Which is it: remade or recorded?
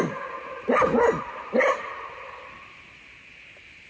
recorded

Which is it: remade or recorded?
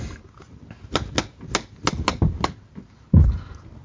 recorded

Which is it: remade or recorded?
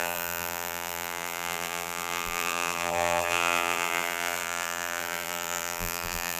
remade